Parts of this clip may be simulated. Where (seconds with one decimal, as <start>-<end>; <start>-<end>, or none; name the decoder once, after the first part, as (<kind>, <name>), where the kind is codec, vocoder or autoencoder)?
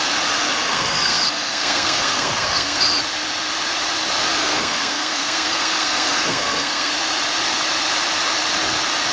0.6-2.8 (codec, SNAC); 4.4-6.9